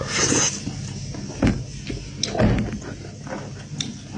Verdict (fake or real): real